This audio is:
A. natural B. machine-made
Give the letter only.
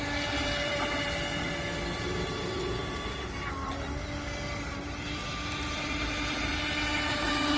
A